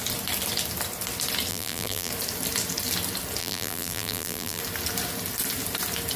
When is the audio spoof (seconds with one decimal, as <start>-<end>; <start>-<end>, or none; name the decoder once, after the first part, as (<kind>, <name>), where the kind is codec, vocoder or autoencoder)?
1.5-2.1 (vocoder, BigVGAN v2); 3.4-4.6